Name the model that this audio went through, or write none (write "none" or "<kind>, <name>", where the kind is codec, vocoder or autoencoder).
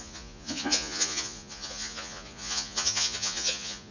vocoder, Vocos